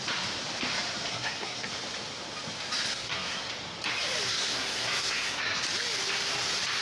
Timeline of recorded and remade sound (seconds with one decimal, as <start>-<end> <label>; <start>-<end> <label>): 0.0-1.1 recorded; 1.1-1.7 remade; 1.7-2.9 recorded; 2.9-3.5 remade; 3.5-4.3 recorded; 4.3-5.6 remade; 5.6-6.8 recorded